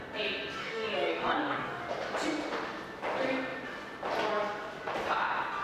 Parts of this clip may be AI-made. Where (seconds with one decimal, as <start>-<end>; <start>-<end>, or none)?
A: 0.6-1.8